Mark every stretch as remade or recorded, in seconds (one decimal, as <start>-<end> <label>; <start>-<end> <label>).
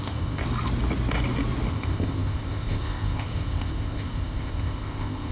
0.0-0.4 remade; 0.4-1.7 recorded; 1.7-5.3 remade